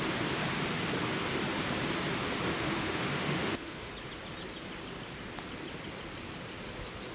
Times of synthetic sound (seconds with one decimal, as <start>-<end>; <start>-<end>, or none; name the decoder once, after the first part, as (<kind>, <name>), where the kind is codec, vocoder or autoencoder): 2.5-3.9 (autoencoder, DAC-VAE)